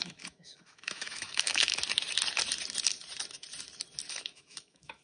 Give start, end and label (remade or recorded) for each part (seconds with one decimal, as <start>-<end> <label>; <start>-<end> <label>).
0.0-1.7 remade; 1.7-4.1 recorded; 4.1-5.0 remade